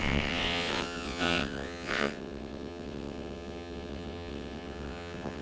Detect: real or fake fake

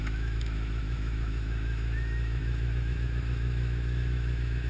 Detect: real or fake fake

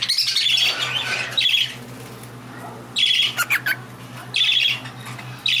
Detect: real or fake real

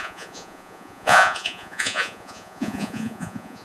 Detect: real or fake fake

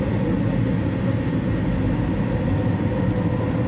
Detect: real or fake real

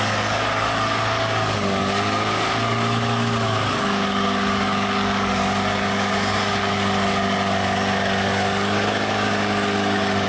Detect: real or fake fake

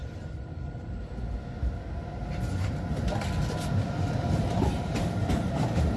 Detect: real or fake real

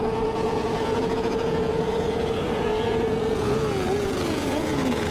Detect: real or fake fake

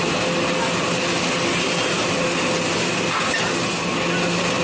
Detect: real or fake real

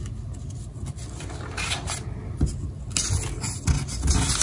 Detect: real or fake real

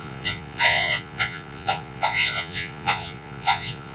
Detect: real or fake fake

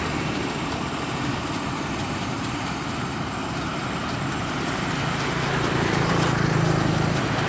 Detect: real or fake fake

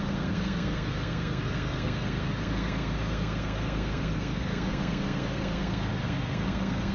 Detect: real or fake fake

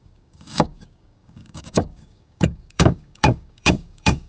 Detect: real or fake fake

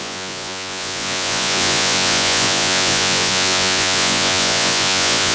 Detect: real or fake fake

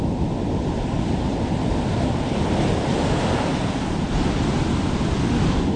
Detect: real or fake real